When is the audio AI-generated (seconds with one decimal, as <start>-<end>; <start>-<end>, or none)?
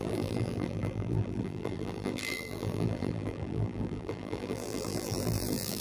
0.0-5.8